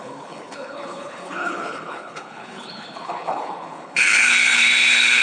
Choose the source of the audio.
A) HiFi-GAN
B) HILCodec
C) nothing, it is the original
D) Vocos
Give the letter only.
B